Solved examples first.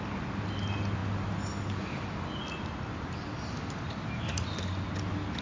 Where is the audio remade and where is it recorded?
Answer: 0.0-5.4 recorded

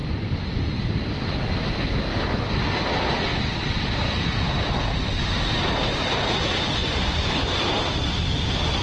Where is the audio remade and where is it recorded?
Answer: 0.0-6.8 recorded; 6.8-7.3 remade; 7.3-8.8 recorded

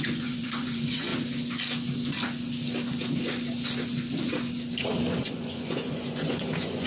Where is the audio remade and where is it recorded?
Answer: 0.0-1.1 remade; 1.1-5.2 recorded; 5.2-6.9 remade